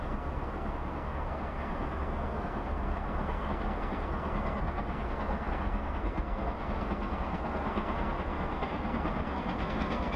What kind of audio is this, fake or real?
fake